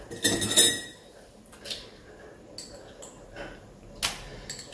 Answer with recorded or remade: recorded